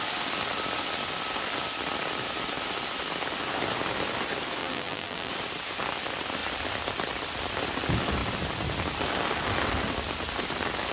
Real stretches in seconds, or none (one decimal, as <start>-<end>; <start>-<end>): 0.0-4.6; 5.3-10.9